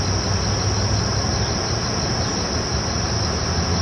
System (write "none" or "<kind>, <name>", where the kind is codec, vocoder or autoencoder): none